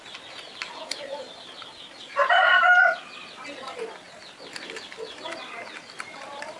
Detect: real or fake real